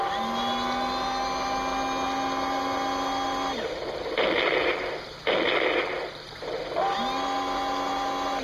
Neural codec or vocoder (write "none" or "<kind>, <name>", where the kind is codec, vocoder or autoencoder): none